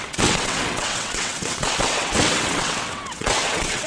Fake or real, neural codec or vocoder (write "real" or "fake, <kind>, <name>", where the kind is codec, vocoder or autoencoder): fake, vocoder, WaveNeXt